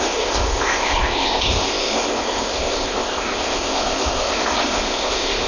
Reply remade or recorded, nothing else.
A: remade